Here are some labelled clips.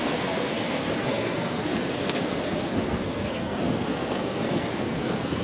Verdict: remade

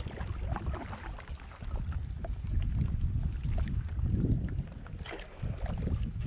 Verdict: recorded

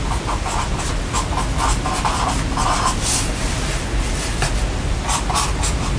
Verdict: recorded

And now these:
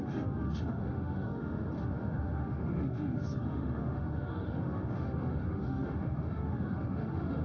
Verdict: remade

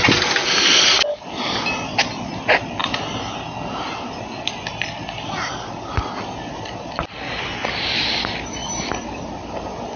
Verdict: recorded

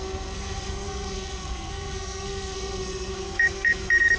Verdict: remade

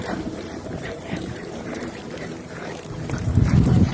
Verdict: remade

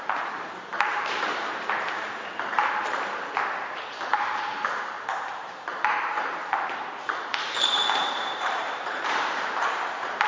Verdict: remade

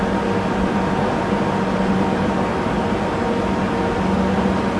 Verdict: recorded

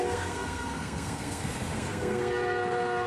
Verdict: remade